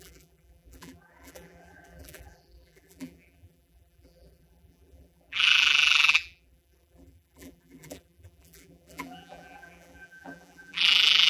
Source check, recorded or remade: remade